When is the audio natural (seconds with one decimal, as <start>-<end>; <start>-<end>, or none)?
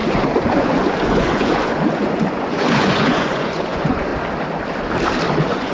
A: 4.1-5.3